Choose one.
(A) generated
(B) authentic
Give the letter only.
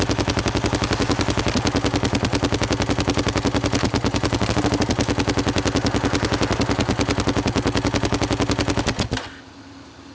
B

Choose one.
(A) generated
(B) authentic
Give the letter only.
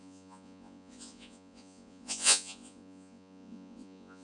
A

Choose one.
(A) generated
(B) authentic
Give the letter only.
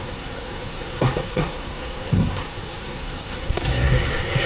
A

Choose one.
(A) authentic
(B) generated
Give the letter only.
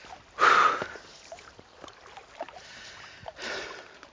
A